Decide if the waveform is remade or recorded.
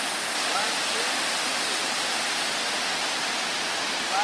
recorded